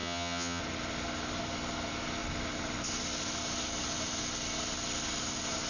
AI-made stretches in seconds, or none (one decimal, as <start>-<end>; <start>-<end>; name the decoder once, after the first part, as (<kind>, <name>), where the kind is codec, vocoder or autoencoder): 0.0-0.6 (vocoder, HiFi-GAN)